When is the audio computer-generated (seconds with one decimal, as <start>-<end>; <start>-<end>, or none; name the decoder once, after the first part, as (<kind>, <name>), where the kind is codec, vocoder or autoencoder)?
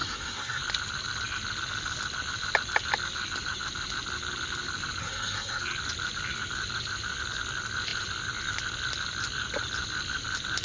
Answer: 0.0-0.6 (codec, SNAC); 5.0-5.6